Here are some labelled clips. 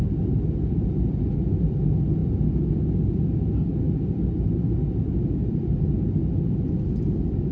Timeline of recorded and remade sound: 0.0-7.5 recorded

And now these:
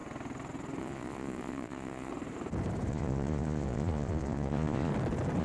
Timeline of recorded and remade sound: 0.0-0.8 recorded; 0.8-2.1 remade; 2.1-2.9 recorded; 2.9-4.9 remade; 4.9-5.4 recorded

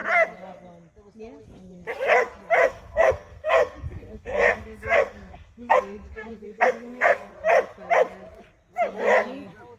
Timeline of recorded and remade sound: 0.0-2.6 recorded; 2.6-7.3 remade; 7.3-9.8 recorded

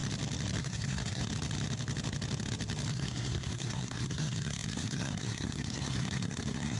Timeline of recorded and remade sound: 0.0-0.6 recorded; 0.6-1.2 remade; 1.2-2.9 recorded; 2.9-6.8 remade

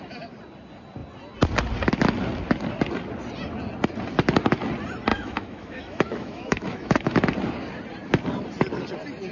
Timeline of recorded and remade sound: 0.0-5.1 recorded; 5.1-7.2 remade; 7.2-9.3 recorded

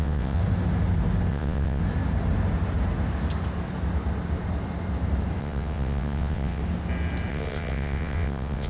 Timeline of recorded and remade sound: 0.0-0.4 remade; 0.4-1.3 recorded; 1.3-1.8 remade; 1.8-5.4 recorded; 5.4-6.6 remade; 6.6-7.3 recorded; 7.3-8.7 remade

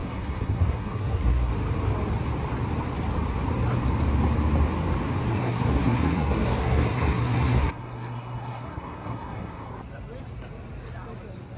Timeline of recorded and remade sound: 0.0-1.5 remade; 1.5-5.3 recorded; 5.3-9.7 remade; 9.7-11.6 recorded

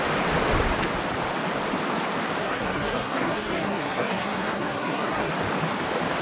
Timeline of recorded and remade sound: 0.0-2.4 recorded; 2.4-5.3 remade; 5.3-6.2 recorded